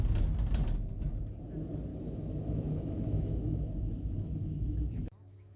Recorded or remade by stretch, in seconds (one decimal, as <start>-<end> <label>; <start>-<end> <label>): 0.0-1.9 recorded; 1.9-5.6 remade